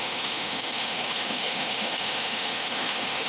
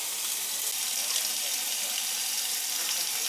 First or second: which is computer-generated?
first